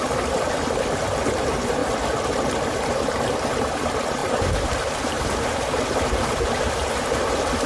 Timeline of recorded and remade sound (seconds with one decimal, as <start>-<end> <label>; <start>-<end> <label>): 0.0-1.8 remade; 1.8-2.4 recorded; 2.4-7.7 remade